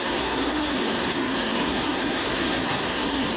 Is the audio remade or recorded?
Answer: remade